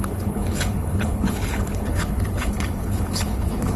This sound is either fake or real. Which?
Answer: fake